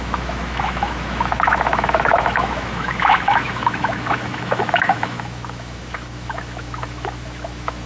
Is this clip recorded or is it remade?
remade